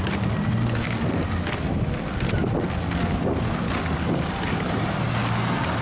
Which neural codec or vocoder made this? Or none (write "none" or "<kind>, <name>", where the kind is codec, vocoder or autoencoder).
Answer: none